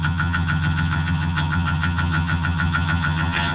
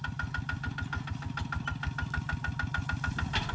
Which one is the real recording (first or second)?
second